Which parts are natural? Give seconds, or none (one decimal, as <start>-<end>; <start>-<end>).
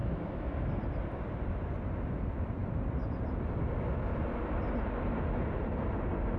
0.6-6.4